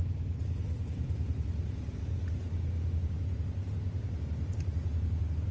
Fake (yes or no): no